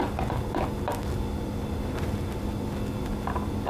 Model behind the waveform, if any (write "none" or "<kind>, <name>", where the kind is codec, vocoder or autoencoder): none